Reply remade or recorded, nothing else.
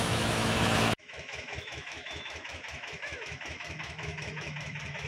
remade